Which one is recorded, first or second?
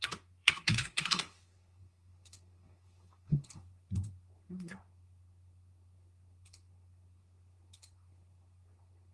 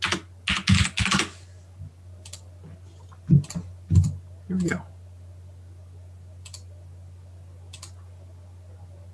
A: second